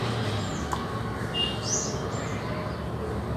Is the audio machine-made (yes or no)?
no